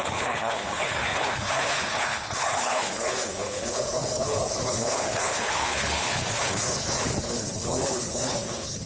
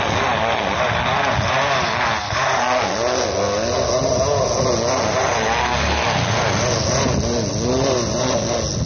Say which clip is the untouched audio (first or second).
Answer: second